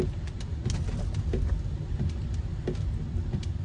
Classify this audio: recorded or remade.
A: recorded